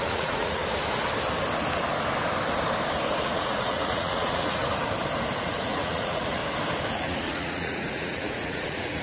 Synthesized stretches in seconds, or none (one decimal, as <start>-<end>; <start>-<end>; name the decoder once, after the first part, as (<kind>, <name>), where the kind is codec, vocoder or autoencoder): 0.0-0.6 (vocoder, Vocos); 3.2-4.6; 5.4-6.4; 6.9-9.0